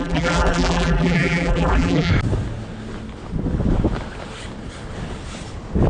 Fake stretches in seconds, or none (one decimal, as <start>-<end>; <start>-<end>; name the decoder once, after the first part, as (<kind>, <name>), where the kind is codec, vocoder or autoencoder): 0.0-2.1 (vocoder, BigVGAN v2)